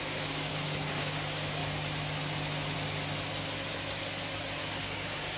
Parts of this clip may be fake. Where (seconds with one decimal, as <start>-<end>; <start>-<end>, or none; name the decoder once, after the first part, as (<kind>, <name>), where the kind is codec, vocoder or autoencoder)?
0.0-1.6 (codec, DAC); 4.8-5.4